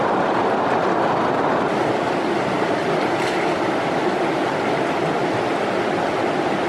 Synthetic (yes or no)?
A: no